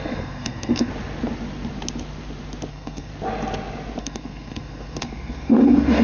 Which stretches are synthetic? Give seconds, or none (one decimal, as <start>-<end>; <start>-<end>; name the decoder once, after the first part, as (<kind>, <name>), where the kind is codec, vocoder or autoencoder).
0.0-0.9 (codec, SNAC); 2.7-3.1; 4.0-6.0